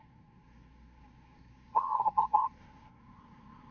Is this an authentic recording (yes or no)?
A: no